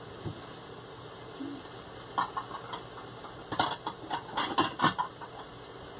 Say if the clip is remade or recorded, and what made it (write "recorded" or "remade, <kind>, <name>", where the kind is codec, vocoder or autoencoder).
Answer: recorded